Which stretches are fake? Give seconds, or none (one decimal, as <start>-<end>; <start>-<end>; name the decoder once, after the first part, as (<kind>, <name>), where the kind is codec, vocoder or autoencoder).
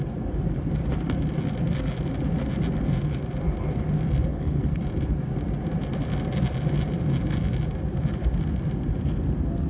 4.3-4.8 (codec, SNAC)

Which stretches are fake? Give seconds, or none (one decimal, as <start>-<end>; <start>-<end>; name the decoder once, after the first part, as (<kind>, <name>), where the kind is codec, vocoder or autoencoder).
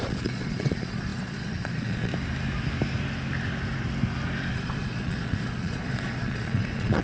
0.0-2.1 (vocoder, Vocos); 4.5-7.0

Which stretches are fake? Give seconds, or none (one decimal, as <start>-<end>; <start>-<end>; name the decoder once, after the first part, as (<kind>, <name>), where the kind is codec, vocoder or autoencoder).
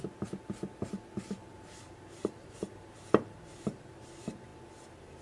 1.5-3.8 (vocoder, BigVGAN v2)